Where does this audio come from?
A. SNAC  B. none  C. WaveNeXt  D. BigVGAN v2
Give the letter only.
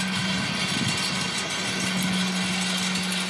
B